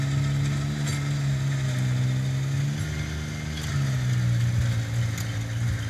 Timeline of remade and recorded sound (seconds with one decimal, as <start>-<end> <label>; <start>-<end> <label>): 0.0-5.9 recorded

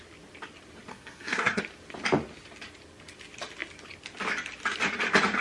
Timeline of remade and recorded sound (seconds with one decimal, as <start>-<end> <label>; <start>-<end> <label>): 0.0-0.9 recorded; 0.9-1.6 remade; 1.6-5.4 recorded